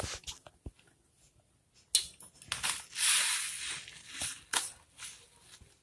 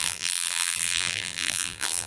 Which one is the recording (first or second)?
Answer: first